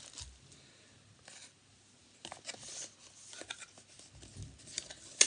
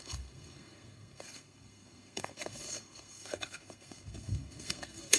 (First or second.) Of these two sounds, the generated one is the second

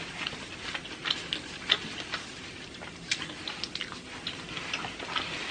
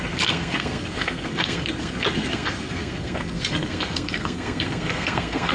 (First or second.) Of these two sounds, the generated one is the second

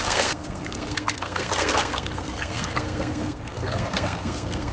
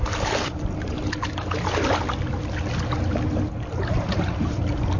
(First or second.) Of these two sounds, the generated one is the first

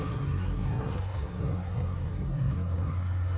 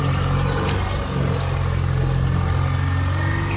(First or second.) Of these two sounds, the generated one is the first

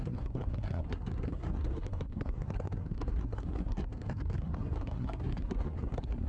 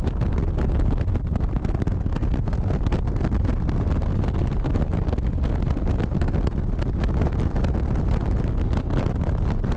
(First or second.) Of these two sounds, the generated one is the first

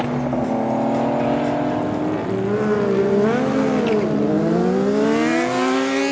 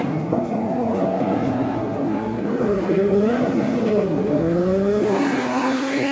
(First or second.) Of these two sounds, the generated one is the second